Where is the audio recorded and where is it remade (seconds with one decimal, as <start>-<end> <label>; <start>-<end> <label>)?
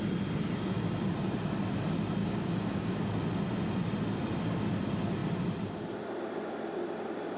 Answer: 0.0-2.2 recorded; 2.2-3.1 remade; 3.1-7.4 recorded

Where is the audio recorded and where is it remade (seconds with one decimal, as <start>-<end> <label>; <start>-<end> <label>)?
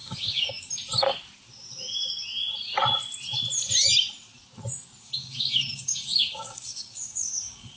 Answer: 0.0-0.7 remade; 0.7-5.0 recorded; 5.0-7.8 remade